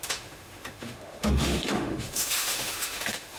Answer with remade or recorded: remade